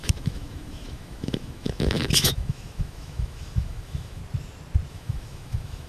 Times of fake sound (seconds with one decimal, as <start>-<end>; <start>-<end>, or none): 0.0-4.2; 4.9-5.9